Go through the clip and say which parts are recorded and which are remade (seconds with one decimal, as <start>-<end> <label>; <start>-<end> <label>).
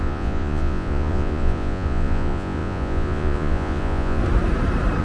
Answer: 0.0-4.2 remade; 4.2-5.0 recorded